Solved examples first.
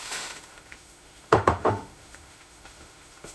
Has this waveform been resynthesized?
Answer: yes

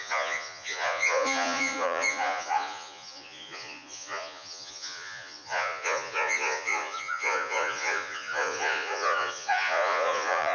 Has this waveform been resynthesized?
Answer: yes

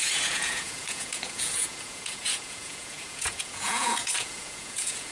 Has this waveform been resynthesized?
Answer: yes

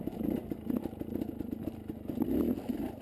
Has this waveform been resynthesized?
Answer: no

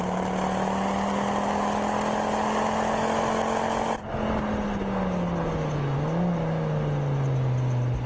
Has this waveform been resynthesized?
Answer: no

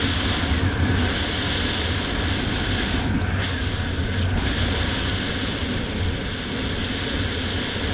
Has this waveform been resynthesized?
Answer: no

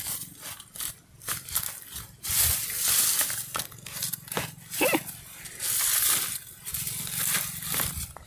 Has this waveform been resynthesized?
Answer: no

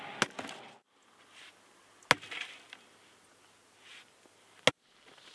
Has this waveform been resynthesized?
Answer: no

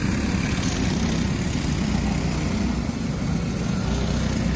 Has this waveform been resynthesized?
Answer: no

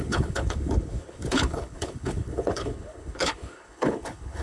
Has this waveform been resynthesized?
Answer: yes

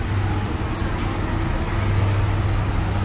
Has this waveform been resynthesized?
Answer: no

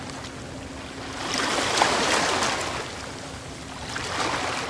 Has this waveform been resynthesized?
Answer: no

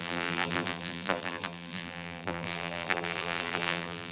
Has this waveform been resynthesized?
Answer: yes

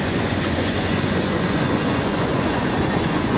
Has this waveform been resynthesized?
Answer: yes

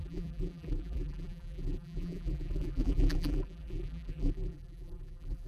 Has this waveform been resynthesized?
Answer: yes